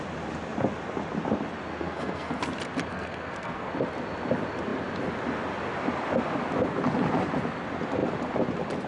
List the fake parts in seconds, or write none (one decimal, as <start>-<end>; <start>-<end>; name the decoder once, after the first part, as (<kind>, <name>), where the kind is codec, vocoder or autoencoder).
1.7-2.4 (codec, SNAC); 2.9-3.7

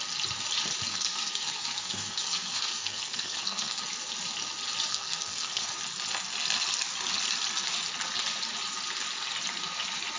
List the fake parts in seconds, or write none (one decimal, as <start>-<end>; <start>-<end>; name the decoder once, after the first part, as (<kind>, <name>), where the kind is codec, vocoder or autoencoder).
0.9-3.8 (codec, SNAC); 4.9-5.7

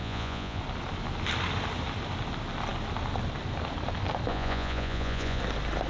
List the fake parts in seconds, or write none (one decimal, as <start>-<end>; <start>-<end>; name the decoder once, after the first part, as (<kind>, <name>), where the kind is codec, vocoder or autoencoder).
0.0-0.6 (vocoder, Vocos); 4.3-5.4

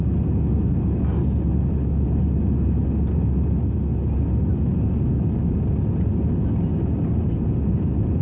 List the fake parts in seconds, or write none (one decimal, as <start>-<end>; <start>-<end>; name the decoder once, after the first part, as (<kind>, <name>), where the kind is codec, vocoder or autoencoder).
none

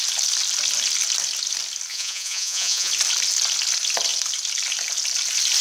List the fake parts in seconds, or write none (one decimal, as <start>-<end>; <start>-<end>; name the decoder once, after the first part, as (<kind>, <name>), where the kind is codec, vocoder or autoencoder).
1.9-2.9 (vocoder, Vocos)